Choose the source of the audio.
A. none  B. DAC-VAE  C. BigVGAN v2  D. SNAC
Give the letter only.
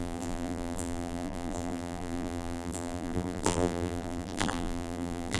C